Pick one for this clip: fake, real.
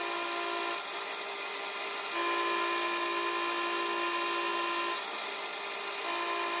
real